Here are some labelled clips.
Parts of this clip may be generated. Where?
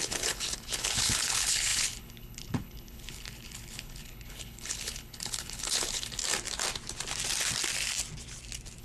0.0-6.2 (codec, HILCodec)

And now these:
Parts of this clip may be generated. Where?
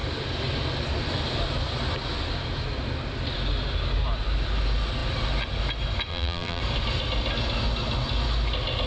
6.1-6.6 (vocoder, BigVGAN v2)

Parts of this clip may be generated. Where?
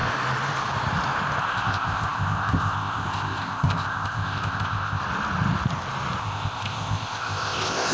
1.4-5.0 (codec, ZipCodec); 6.2-7.9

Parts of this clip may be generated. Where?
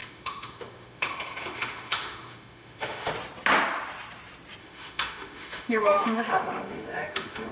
0.0-3.1 (autoencoder, DAC-VAE); 4.6-7.5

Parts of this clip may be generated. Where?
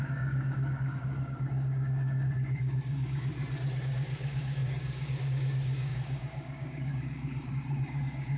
0.0-3.3 (codec, DAC); 3.8-8.4